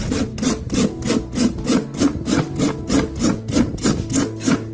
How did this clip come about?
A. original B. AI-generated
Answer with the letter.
A